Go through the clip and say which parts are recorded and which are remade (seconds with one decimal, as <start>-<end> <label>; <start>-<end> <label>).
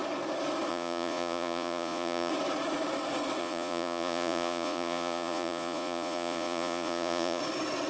0.0-0.7 recorded; 0.7-2.3 remade; 2.3-3.4 recorded; 3.4-7.4 remade; 7.4-7.9 recorded